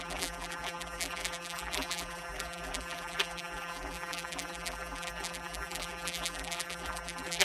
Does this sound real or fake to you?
fake